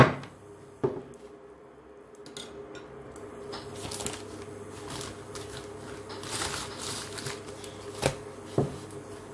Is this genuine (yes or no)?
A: yes